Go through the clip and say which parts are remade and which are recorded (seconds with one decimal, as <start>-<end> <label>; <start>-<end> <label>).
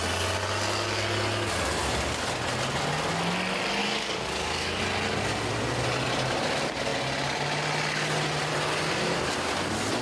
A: 0.0-3.8 recorded; 3.8-4.8 remade; 4.8-10.0 recorded